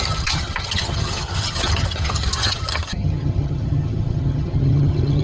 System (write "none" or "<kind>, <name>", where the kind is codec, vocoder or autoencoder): vocoder, HiFi-GAN